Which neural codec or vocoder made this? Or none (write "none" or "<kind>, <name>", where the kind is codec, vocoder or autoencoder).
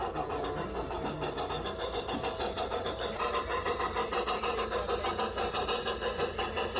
none